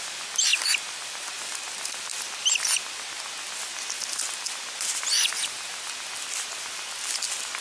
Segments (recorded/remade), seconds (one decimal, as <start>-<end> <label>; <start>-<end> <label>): 0.0-7.6 recorded